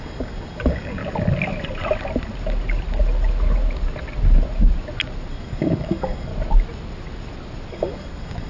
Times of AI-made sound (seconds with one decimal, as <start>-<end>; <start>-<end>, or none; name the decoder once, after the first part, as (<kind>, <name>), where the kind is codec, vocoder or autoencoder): 0.0-1.0 (codec, DAC); 5.3-6.3; 7.7-8.5